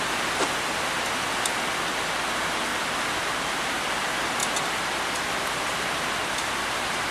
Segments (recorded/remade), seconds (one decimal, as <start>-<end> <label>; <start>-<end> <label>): 0.0-2.7 recorded; 2.7-3.7 remade; 3.7-7.1 recorded

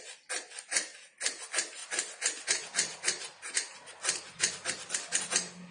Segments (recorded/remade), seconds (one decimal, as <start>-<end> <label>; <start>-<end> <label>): 0.0-5.7 recorded

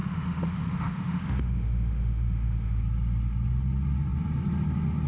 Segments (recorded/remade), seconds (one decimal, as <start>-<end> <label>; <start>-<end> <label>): 0.0-2.8 remade; 2.8-5.1 recorded

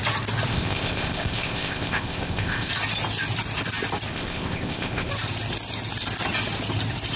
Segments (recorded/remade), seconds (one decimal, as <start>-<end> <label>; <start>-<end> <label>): 0.0-0.5 recorded; 0.5-2.7 remade; 2.7-4.1 recorded; 4.1-5.1 remade; 5.1-7.2 recorded

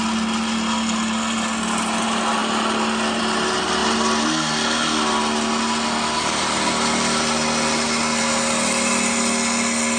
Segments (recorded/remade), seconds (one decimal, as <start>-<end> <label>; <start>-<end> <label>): 0.0-10.0 recorded